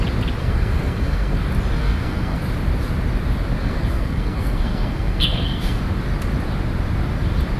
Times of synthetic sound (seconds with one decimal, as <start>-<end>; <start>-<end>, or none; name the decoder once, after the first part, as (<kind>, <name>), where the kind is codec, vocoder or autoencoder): 0.4-1.4 (codec, SNAC); 1.8-2.4; 3.6-5.8